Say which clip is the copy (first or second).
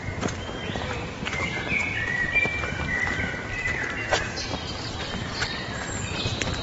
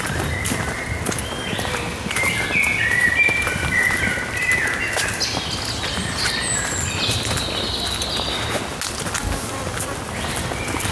first